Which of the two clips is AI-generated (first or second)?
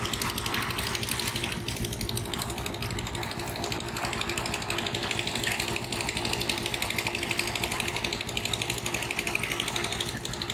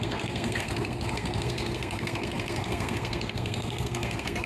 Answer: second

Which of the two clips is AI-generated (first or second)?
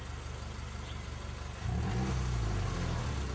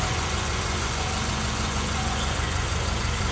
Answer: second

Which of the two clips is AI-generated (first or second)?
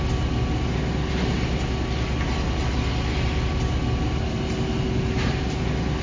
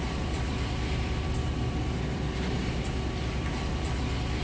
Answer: second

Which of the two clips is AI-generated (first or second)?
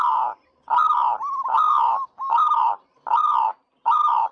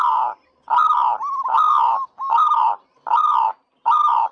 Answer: first